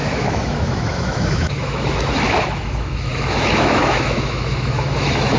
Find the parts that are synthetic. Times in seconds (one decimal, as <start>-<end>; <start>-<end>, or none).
0.0-5.4